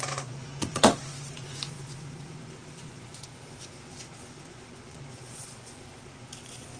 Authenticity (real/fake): fake